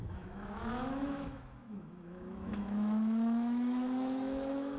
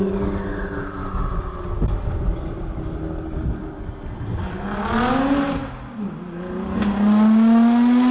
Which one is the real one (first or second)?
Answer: second